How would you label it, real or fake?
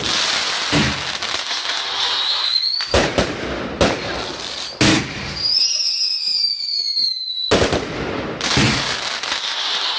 real